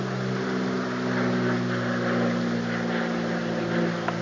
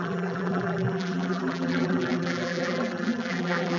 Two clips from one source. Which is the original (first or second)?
first